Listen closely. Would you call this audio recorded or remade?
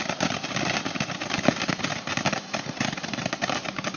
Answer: recorded